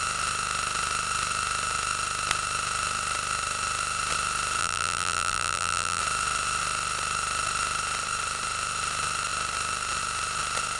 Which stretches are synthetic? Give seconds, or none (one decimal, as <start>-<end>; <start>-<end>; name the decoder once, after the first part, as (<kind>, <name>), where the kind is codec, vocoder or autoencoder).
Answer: 4.6-6.0 (vocoder, BigVGAN v2)